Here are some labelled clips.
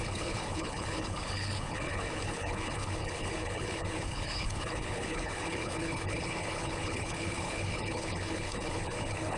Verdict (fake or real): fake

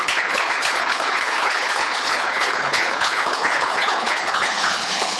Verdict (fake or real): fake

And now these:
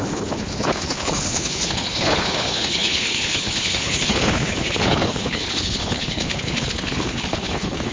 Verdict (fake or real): fake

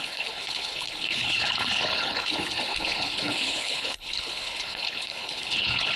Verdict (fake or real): fake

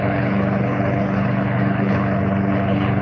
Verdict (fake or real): fake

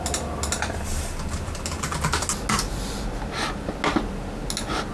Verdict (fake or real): real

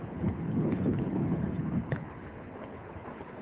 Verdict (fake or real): fake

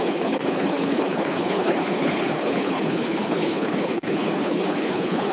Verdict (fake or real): fake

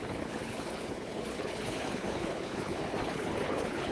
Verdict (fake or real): fake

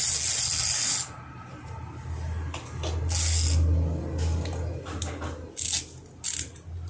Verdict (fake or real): real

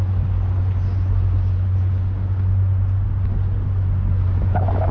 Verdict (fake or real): real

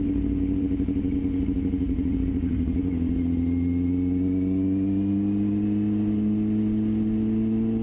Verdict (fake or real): real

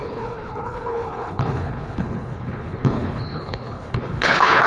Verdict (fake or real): fake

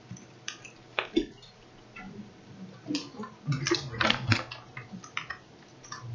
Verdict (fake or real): real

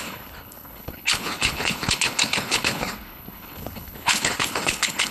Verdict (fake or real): fake